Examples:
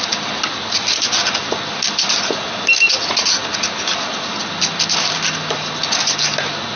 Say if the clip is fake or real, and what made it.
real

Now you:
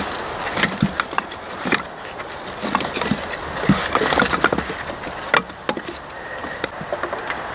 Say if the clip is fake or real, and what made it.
real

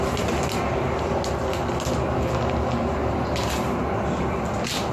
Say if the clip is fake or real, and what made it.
real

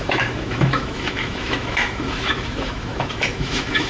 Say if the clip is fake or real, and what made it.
fake, autoencoder, DAC-VAE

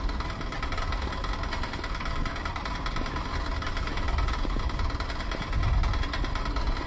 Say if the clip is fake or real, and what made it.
real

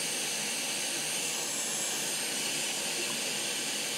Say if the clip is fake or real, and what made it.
real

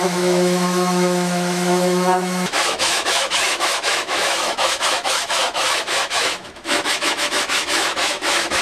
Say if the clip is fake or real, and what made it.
fake, autoencoder, DAC-VAE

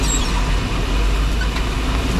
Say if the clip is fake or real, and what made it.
real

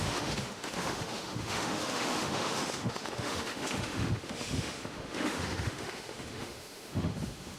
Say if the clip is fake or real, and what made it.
fake, autoencoder, DAC-VAE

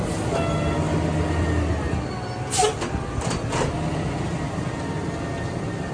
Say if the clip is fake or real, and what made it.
real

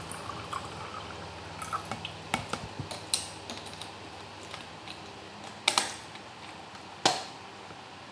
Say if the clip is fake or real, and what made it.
real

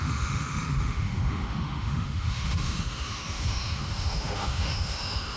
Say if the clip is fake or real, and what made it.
fake, autoencoder, DAC-VAE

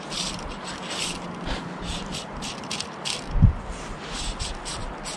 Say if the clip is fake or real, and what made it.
real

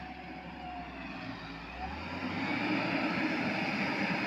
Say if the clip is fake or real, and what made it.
real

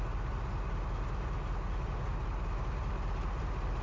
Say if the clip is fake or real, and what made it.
real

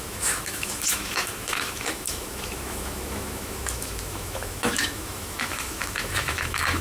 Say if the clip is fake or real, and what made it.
fake, autoencoder, DAC-VAE